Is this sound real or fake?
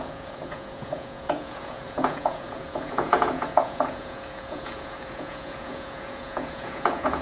fake